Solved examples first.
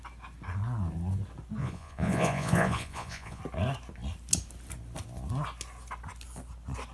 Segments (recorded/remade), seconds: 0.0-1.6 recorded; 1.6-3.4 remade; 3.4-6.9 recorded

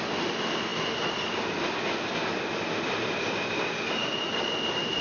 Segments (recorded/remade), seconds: 0.0-5.0 recorded

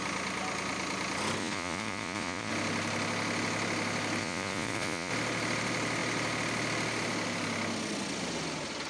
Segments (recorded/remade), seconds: 0.0-1.4 recorded; 1.4-2.5 remade; 2.5-4.2 recorded; 4.2-5.1 remade; 5.1-8.9 recorded

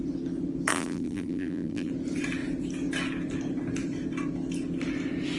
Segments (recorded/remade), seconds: 0.0-0.7 recorded; 0.7-1.9 remade; 1.9-5.4 recorded